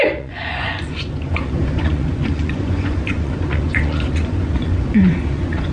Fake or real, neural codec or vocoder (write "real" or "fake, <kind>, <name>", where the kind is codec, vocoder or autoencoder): fake, vocoder, Vocos